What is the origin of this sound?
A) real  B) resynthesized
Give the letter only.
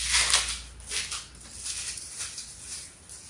A